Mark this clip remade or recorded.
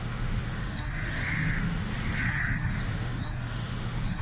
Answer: remade